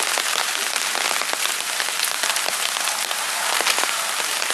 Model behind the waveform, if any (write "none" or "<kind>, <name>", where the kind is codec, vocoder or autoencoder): none